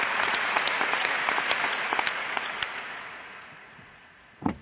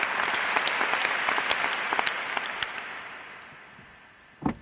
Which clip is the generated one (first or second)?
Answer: first